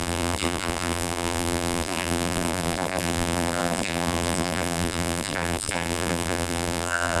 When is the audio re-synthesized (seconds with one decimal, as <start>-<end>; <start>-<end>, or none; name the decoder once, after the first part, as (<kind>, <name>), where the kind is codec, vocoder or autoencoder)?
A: 0.0-7.2 (vocoder, BigVGAN v2)